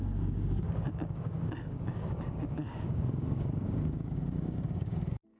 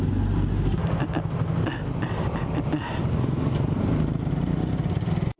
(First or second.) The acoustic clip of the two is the second